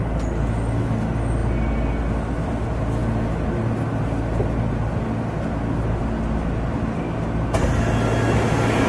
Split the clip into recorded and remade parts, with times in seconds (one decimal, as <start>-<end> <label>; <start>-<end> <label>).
0.0-8.9 recorded

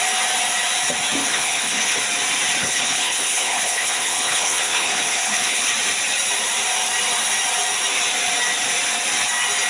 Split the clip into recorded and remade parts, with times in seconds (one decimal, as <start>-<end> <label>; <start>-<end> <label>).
0.0-1.2 recorded; 1.2-2.0 remade; 2.0-2.6 recorded; 2.6-5.7 remade; 5.7-9.7 recorded

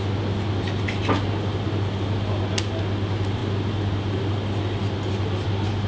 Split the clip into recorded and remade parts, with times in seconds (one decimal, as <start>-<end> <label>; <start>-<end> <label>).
0.0-5.9 recorded

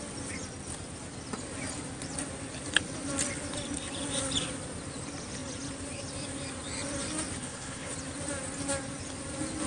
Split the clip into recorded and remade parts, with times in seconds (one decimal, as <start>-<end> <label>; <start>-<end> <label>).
0.0-7.4 recorded; 7.4-7.9 remade; 7.9-9.7 recorded

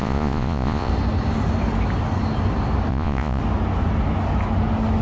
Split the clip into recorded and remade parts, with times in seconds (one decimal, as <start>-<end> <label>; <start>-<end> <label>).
0.0-0.9 remade; 0.9-2.9 recorded; 2.9-3.4 remade; 3.4-5.0 recorded

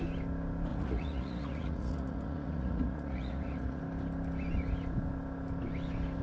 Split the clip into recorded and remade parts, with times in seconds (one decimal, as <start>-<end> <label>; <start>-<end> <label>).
0.0-0.7 recorded; 0.7-3.8 remade; 3.8-6.2 recorded

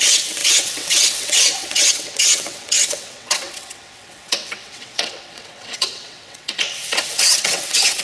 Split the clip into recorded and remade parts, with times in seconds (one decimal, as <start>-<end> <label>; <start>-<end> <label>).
0.0-8.0 remade

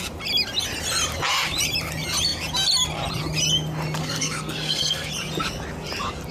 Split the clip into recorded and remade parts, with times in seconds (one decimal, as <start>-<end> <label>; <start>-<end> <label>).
0.0-4.0 recorded; 4.0-5.1 remade; 5.1-6.3 recorded